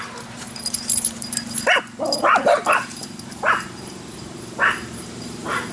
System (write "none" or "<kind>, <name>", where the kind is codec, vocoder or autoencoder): vocoder, BigVGAN v2